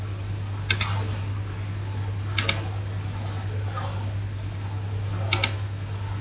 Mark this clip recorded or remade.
recorded